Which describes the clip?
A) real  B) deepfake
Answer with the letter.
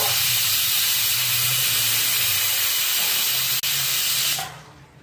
A